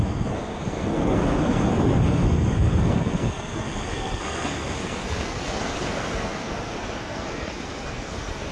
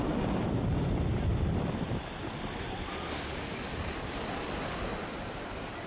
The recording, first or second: second